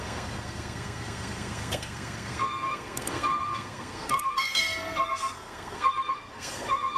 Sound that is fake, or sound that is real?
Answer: fake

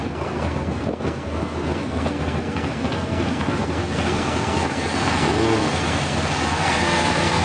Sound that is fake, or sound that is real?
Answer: fake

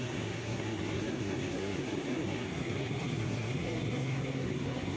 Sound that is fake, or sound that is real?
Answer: fake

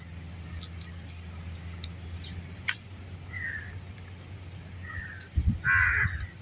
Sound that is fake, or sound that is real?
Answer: real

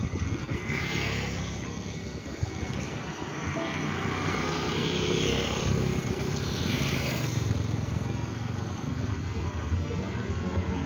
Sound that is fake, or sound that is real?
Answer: fake